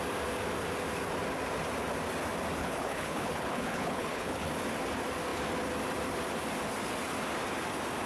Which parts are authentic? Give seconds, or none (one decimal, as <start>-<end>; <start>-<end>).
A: 0.0-2.6; 4.5-8.1

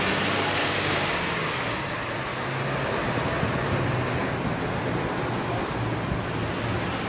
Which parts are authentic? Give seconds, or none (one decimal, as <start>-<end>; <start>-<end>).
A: 0.0-0.6; 1.9-7.1